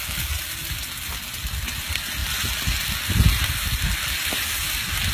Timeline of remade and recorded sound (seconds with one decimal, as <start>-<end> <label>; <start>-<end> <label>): 0.0-5.1 recorded